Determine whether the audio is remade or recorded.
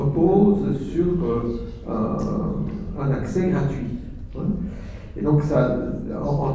recorded